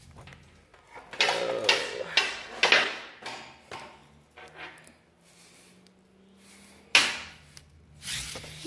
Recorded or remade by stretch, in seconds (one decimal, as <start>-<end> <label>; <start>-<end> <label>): 0.0-8.7 recorded